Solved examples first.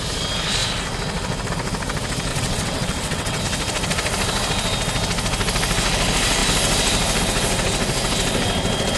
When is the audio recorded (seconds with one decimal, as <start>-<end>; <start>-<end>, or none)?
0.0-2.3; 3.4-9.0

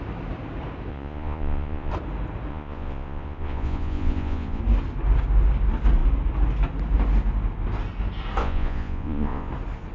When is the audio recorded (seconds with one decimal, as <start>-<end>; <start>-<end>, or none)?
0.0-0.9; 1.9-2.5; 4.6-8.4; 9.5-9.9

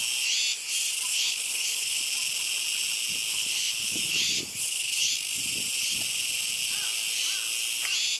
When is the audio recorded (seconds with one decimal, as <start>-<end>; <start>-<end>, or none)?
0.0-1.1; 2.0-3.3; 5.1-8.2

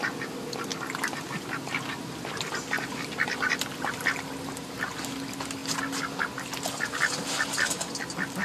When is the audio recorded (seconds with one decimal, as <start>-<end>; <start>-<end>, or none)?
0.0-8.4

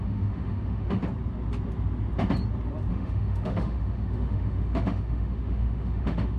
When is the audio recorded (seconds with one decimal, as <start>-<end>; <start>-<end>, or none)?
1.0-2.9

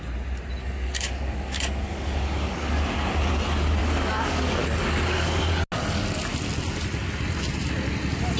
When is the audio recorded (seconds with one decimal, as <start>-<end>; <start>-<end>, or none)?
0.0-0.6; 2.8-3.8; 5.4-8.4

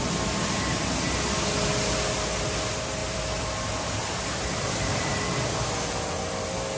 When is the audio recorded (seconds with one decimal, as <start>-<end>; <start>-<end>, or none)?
0.0-3.0; 5.1-6.8